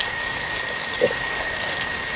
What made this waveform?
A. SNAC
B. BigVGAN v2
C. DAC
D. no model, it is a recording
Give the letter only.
C